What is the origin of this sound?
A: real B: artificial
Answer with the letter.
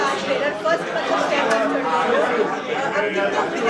A